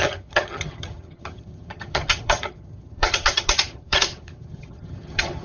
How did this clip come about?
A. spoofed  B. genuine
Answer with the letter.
A